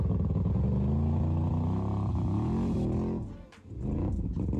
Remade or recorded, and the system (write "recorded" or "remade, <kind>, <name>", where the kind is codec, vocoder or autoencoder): recorded